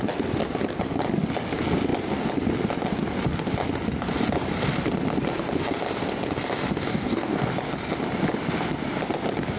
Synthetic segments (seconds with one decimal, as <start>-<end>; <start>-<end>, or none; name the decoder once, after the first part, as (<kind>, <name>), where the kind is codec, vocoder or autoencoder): 6.9-7.5 (codec, DAC)